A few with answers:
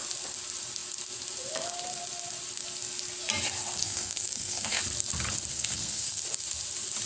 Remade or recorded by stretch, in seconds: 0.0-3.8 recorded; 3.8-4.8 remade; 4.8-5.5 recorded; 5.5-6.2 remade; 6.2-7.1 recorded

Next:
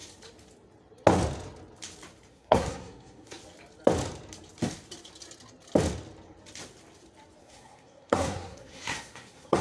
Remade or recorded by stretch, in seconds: 0.0-2.3 recorded; 2.3-3.4 remade; 3.4-7.4 recorded; 7.4-9.6 remade

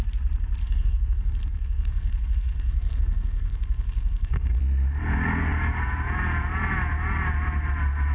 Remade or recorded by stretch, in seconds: 0.0-0.6 recorded; 0.6-4.6 remade; 4.6-8.1 recorded

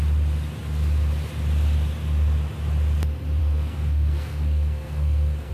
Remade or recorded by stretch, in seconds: 0.0-3.4 recorded; 3.4-5.5 remade

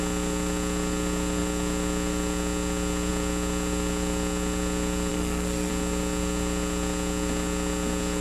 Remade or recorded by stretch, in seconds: 0.0-5.1 recorded; 5.1-5.7 remade; 5.7-8.2 recorded

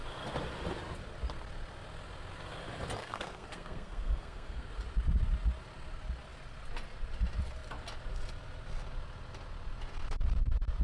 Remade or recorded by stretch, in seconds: 0.0-3.0 recorded; 3.0-4.7 remade; 4.7-10.8 recorded

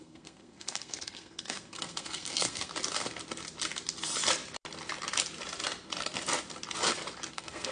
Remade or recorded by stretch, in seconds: 0.0-2.7 remade; 2.7-7.3 recorded; 7.3-7.7 remade

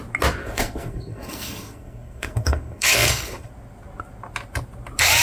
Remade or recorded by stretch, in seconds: 0.0-0.4 recorded; 0.4-3.5 remade; 3.5-5.2 recorded